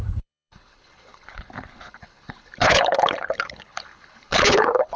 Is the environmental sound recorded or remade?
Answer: remade